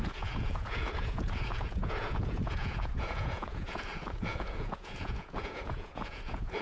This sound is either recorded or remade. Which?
remade